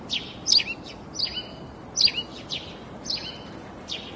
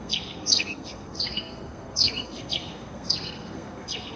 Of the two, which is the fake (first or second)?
second